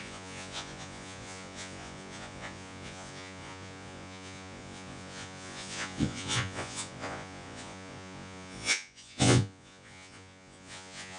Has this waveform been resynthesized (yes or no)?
yes